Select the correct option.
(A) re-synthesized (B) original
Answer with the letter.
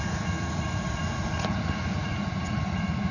A